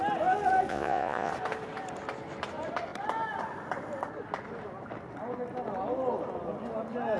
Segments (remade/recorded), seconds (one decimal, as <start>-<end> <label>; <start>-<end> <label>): 0.0-0.7 recorded; 0.7-1.3 remade; 1.3-7.2 recorded